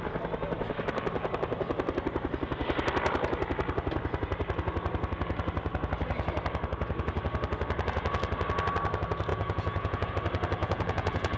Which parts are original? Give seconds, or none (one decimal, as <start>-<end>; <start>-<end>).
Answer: 0.0-9.3; 10.1-10.6